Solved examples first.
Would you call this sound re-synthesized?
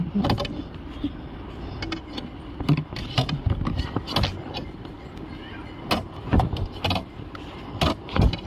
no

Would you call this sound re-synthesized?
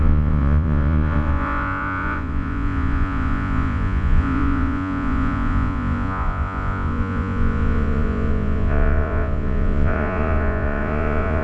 yes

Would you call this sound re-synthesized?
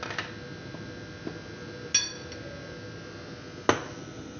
no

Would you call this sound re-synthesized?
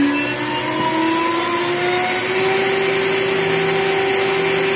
no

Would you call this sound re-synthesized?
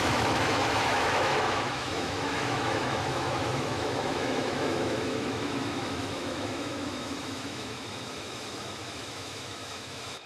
yes